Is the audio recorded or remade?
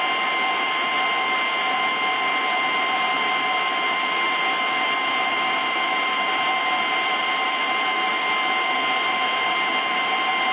remade